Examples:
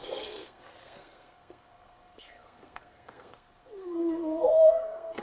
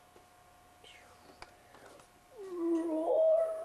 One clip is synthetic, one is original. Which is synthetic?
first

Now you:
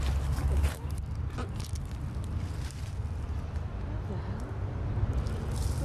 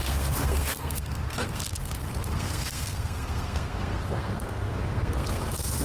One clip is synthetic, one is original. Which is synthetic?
second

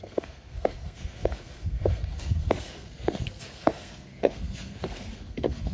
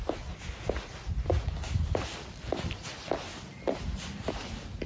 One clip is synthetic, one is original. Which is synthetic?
first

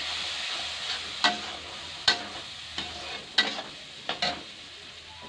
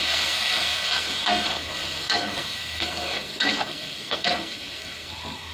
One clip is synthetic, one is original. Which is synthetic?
second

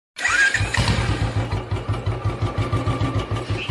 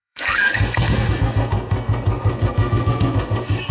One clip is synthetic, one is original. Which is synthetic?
second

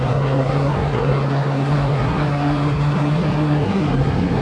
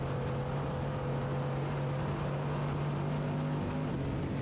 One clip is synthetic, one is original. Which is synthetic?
first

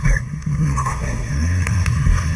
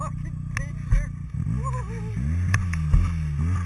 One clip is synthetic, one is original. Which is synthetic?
first